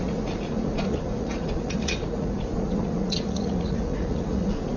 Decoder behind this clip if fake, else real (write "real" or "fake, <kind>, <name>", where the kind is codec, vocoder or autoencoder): fake, vocoder, Vocos